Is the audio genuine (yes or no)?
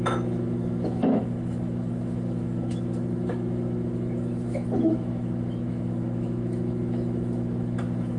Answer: no